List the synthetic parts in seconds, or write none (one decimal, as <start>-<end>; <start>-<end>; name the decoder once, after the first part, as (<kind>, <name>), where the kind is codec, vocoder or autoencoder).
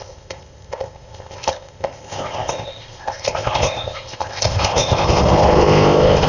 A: 0.0-6.3 (codec, ZipCodec)